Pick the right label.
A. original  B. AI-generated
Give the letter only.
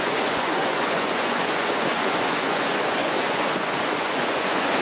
B